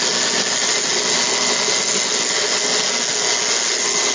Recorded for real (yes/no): yes